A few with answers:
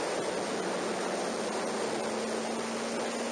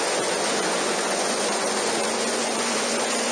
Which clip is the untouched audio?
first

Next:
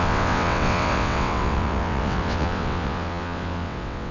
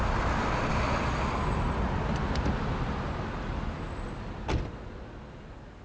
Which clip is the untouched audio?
second